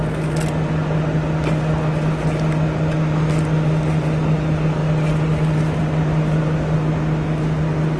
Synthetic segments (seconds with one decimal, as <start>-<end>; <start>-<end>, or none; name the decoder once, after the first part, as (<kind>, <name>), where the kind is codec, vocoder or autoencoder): none